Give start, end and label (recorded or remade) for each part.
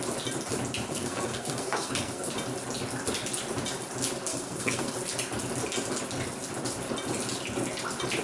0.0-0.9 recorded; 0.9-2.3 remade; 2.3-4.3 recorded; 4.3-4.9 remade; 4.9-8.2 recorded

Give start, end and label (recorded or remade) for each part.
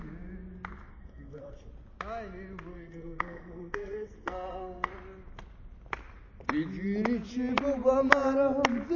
0.0-0.9 recorded; 0.9-1.7 remade; 1.7-2.7 recorded; 2.7-4.9 remade; 4.9-9.0 recorded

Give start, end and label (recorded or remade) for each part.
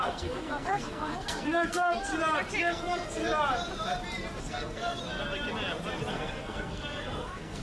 0.0-2.1 remade; 2.1-2.6 recorded; 2.6-3.2 remade; 3.2-4.4 recorded; 4.4-5.0 remade; 5.0-6.1 recorded; 6.1-7.6 remade